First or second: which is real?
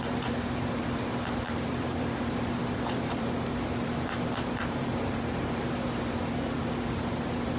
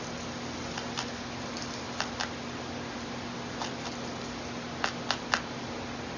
second